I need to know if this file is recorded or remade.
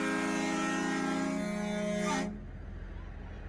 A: recorded